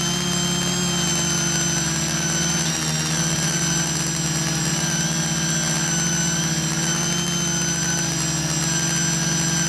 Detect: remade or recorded recorded